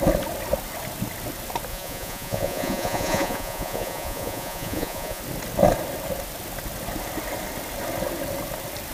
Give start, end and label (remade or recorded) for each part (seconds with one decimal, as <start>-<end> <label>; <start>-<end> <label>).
0.0-1.7 recorded; 1.7-5.2 remade; 5.2-8.9 recorded